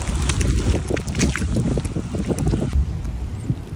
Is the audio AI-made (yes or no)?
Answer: no